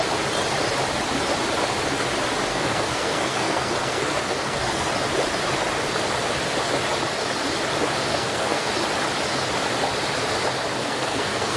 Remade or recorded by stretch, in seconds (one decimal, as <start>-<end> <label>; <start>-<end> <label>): 0.0-2.5 recorded; 2.5-4.9 remade; 4.9-8.1 recorded; 8.1-8.7 remade; 8.7-10.8 recorded; 10.8-11.6 remade